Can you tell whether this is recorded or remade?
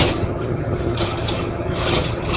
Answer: remade